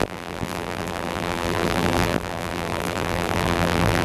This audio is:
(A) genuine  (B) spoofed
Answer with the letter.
B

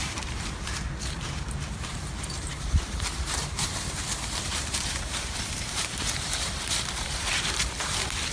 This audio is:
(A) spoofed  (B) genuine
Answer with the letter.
A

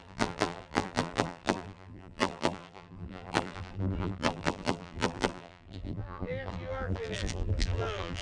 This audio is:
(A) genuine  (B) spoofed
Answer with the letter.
B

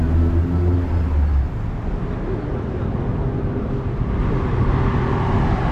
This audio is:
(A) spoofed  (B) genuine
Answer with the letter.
B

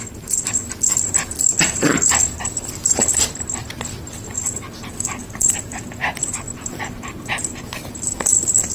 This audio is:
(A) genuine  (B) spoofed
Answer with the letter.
B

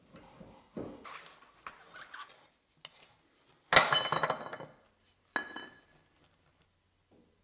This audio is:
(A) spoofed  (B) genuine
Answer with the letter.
B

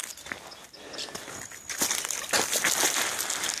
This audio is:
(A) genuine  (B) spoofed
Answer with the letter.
A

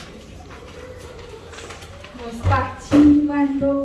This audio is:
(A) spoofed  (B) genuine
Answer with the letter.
A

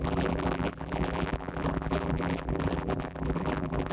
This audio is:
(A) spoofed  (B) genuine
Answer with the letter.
A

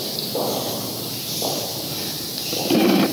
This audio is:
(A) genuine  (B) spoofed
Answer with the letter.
A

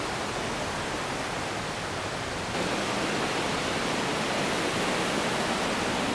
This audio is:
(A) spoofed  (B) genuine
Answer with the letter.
B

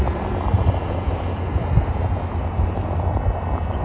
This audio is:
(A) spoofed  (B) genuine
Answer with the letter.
B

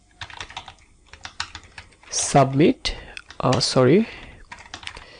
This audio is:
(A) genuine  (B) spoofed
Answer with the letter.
A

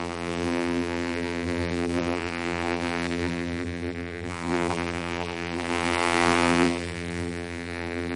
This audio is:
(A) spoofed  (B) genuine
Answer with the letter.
A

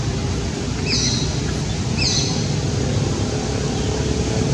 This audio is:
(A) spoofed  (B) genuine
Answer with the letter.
B